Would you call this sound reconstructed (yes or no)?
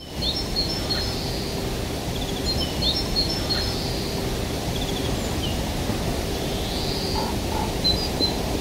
no